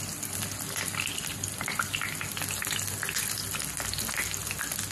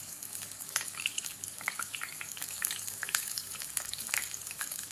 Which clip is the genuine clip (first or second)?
first